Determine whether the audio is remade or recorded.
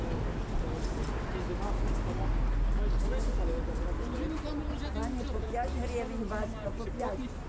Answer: recorded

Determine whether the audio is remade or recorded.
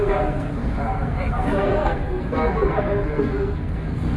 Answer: remade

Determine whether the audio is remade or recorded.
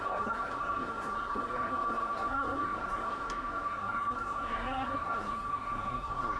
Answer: remade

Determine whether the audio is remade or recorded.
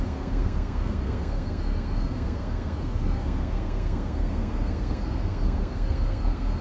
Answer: remade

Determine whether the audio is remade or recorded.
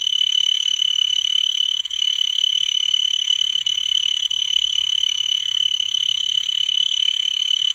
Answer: remade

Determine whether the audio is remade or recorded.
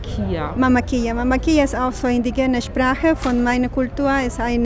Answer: recorded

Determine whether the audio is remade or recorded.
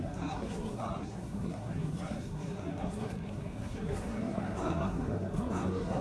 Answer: remade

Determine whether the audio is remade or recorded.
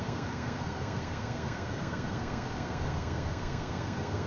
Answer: remade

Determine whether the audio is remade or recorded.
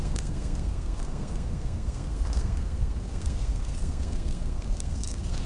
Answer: remade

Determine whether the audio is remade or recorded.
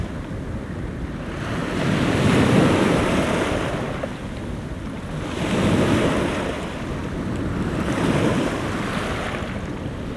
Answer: recorded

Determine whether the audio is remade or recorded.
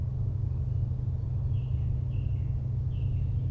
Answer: recorded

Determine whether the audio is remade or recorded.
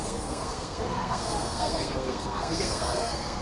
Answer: remade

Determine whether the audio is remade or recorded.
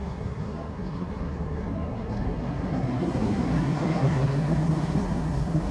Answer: remade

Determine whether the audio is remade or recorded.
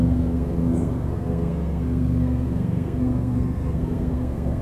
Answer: remade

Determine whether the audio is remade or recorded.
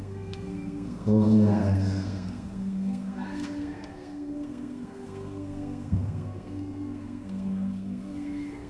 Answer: remade